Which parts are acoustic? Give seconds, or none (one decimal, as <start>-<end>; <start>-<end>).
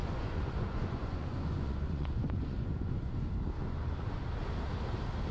3.2-3.6; 4.2-5.3